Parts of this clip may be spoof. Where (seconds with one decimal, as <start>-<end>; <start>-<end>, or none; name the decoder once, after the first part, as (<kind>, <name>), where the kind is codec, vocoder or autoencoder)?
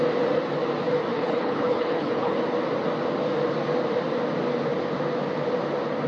1.1-2.4 (codec, HILCodec)